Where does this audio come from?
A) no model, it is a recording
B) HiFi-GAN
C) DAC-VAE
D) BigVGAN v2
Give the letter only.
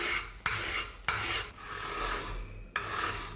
A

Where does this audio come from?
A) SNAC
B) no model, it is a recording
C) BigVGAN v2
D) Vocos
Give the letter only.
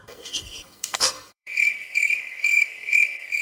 A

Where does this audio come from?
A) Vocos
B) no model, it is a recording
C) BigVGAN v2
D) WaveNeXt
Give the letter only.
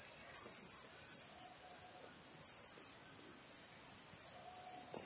B